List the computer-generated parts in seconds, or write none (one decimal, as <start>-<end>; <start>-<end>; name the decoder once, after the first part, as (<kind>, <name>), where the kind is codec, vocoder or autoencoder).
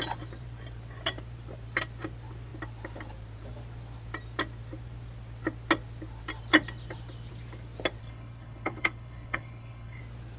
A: 8.0-10.0 (codec, HILCodec)